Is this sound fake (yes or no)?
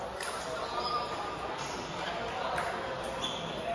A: yes